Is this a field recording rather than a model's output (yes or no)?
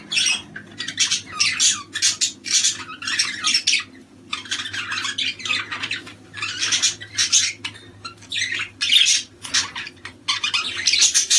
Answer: yes